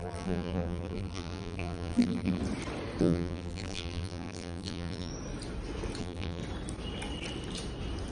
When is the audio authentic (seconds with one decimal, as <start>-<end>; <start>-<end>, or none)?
2.4-3.0; 5.1-6.0; 6.4-8.1